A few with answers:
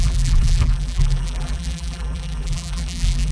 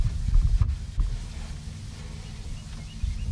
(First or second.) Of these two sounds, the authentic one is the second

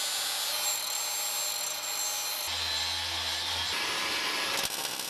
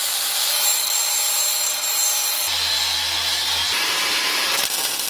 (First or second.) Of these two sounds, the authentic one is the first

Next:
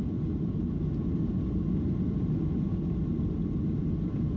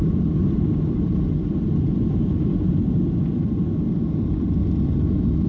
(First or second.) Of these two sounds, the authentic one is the first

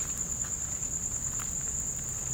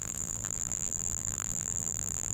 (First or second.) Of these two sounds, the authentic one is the first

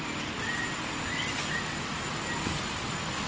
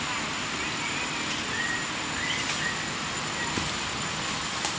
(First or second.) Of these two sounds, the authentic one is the first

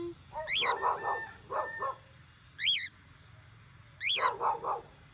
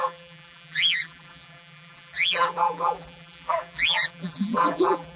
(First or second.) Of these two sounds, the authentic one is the first